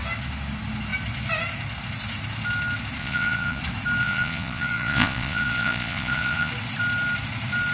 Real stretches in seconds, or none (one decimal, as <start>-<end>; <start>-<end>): 0.0-3.0; 3.6-4.0; 6.5-7.7